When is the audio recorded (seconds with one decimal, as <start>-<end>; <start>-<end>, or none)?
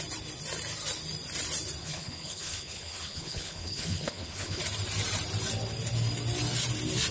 0.0-1.8; 4.6-7.1